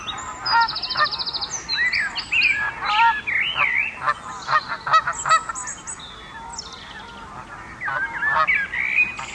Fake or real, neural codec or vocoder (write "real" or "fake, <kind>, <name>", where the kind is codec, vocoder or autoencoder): real